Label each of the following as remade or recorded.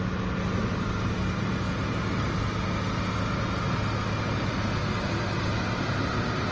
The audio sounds recorded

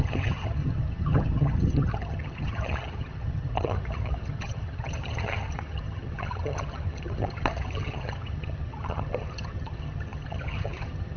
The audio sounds remade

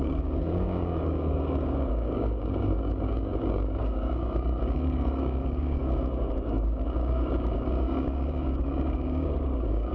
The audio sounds remade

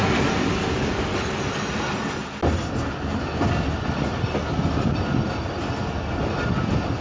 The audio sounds recorded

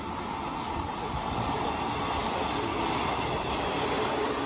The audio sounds recorded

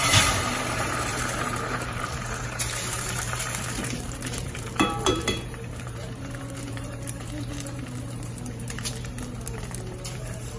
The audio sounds remade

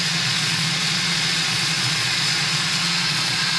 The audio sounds remade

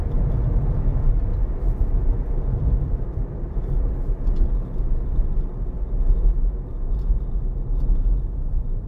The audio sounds recorded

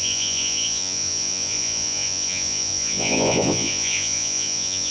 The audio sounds remade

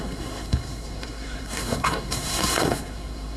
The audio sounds remade